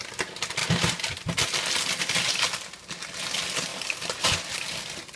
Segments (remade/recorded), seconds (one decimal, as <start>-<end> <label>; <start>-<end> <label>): 0.0-3.7 recorded; 3.7-4.3 remade; 4.3-5.2 recorded